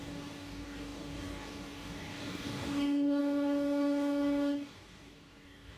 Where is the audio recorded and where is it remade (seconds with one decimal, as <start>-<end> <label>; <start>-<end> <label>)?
0.0-5.8 remade